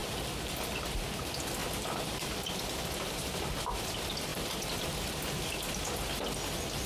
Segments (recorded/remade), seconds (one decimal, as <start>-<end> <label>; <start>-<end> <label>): 0.0-0.5 remade; 0.5-1.6 recorded; 1.6-2.6 remade; 2.6-4.3 recorded; 4.3-5.1 remade; 5.1-6.9 recorded